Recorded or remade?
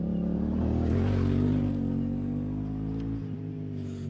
recorded